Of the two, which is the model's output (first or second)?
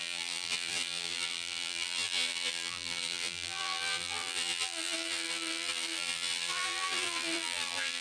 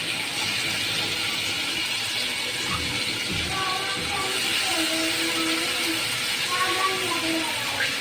first